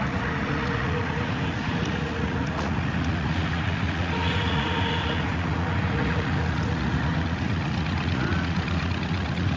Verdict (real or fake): fake